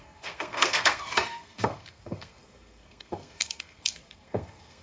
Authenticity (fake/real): fake